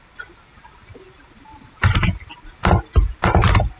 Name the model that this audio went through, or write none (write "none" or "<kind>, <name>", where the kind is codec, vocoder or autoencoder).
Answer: none